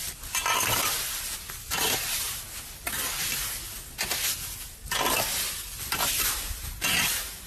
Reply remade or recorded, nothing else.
recorded